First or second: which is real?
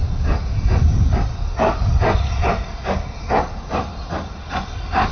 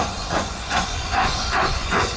first